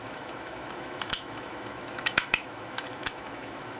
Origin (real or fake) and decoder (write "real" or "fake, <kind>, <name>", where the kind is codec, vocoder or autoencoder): fake, autoencoder, DAC-VAE